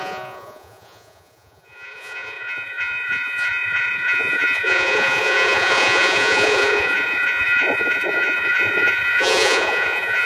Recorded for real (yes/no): no